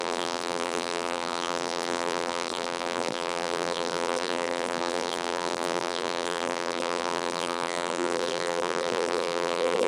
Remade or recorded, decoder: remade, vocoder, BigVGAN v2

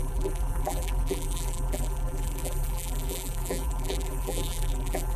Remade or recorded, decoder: remade, vocoder, BigVGAN v2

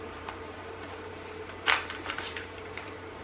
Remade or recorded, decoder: remade, vocoder, BigVGAN v2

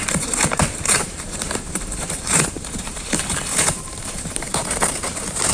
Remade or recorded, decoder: remade, vocoder, BigVGAN v2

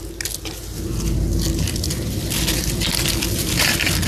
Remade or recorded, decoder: recorded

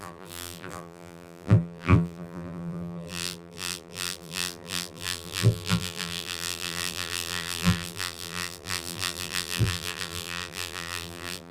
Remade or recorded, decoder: remade, vocoder, BigVGAN v2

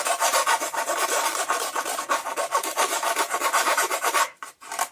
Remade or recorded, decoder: remade, vocoder, BigVGAN v2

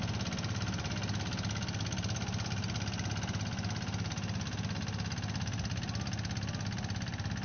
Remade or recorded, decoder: recorded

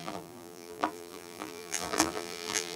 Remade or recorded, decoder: remade, vocoder, BigVGAN v2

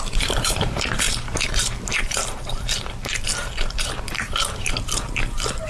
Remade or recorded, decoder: remade, vocoder, BigVGAN v2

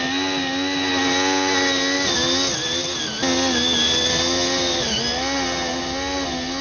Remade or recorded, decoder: recorded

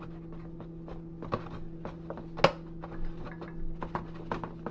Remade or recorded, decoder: recorded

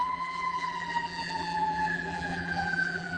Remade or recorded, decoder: remade, vocoder, BigVGAN v2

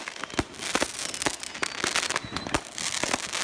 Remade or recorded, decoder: recorded